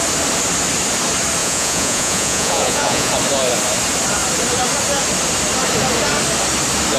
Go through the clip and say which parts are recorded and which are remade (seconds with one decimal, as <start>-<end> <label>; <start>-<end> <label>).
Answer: 0.0-1.4 recorded; 1.4-3.1 remade; 3.1-7.0 recorded